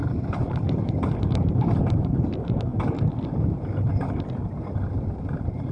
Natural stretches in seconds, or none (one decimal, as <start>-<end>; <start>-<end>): 2.7-3.3; 3.9-5.1